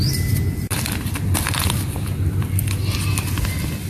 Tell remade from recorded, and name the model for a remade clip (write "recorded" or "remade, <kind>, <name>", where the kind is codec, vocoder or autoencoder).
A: recorded